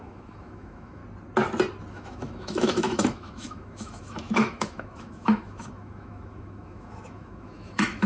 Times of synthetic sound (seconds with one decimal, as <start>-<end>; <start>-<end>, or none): 0.0-1.0; 1.9-8.1